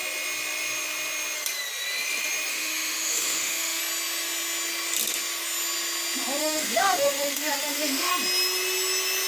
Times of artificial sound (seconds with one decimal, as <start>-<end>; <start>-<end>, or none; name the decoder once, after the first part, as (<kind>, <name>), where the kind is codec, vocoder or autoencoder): 2.5-3.8 (autoencoder, DAC-VAE); 6.4-8.1